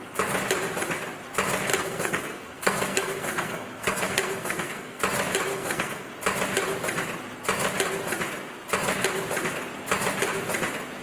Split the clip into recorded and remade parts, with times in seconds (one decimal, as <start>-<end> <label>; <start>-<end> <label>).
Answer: 0.0-1.7 recorded; 1.7-5.0 remade; 5.0-5.5 recorded; 5.5-6.1 remade; 6.1-11.0 recorded